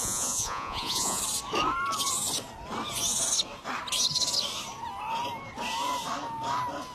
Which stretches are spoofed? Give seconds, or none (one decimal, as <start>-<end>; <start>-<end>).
0.0-1.2